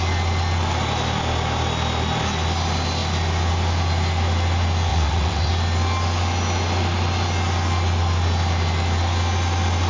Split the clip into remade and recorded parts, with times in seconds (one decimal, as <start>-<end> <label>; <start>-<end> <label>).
0.0-4.9 recorded; 4.9-5.5 remade; 5.5-9.9 recorded

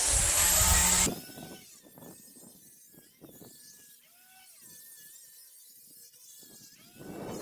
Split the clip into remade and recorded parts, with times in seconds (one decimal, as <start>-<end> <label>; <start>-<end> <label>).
0.0-7.4 recorded

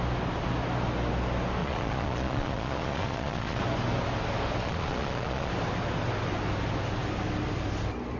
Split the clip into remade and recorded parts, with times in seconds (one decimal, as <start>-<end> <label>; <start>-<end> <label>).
0.0-1.6 recorded; 1.6-3.6 remade; 3.6-4.6 recorded; 4.6-5.5 remade; 5.5-8.2 recorded

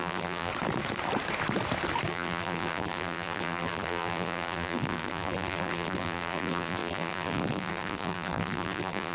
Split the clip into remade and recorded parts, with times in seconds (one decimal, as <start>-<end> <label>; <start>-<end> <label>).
0.0-0.5 remade; 0.5-2.1 recorded; 2.1-9.1 remade

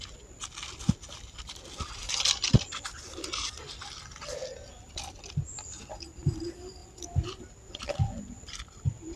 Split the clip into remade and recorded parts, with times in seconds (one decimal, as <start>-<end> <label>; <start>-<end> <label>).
0.0-9.2 recorded

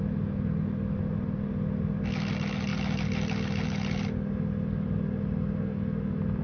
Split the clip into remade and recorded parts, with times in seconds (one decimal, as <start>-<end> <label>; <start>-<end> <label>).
0.0-6.4 recorded